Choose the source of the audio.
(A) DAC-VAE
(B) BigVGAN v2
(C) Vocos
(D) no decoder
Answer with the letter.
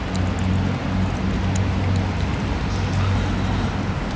D